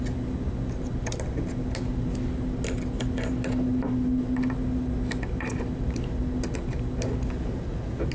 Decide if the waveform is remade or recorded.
recorded